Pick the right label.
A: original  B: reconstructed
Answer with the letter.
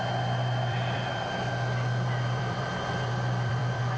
B